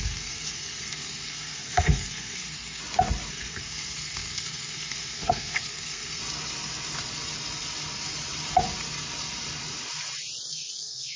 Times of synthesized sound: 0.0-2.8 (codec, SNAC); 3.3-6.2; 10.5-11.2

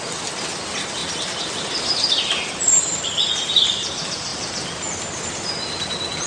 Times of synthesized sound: none

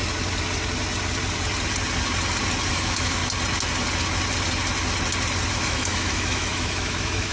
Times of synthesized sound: 2.7-3.2 (autoencoder, DAC-VAE); 5.5-7.3

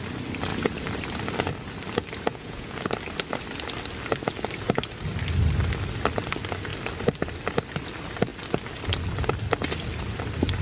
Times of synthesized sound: 2.3-2.9 (vocoder, Vocos)

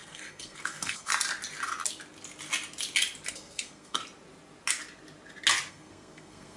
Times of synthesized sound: 0.0-1.1 (codec, SNAC); 3.3-4.0; 5.7-6.6

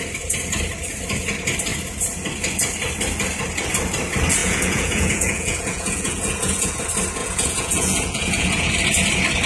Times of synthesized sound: 4.4-6.8 (vocoder, Vocos); 7.2-8.7

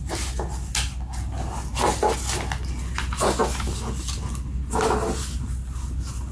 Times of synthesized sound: none

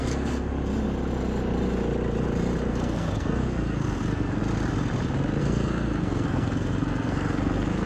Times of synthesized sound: 0.0-0.5 (codec, SNAC); 2.7-4.4; 5.4-7.9